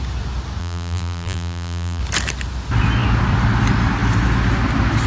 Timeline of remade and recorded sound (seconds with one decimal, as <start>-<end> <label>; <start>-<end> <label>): 0.0-0.6 recorded; 0.6-2.0 remade; 2.0-5.1 recorded